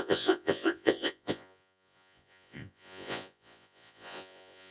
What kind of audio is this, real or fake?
fake